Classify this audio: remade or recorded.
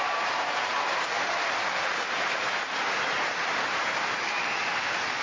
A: remade